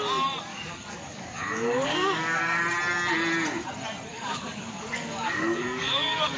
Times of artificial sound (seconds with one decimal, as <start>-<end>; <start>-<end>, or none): 0.5-2.6; 4.1-6.4